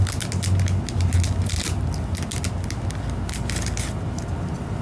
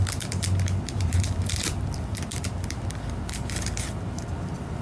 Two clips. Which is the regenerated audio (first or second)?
second